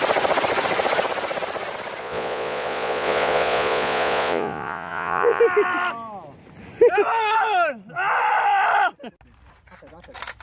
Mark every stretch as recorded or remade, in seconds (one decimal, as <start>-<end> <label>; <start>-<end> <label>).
0.0-2.0 recorded; 2.0-5.4 remade; 5.4-10.4 recorded